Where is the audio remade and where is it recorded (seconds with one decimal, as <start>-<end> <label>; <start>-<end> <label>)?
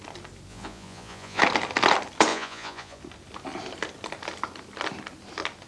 0.0-0.5 recorded; 0.5-1.4 remade; 1.4-2.3 recorded; 2.3-3.0 remade; 3.0-5.7 recorded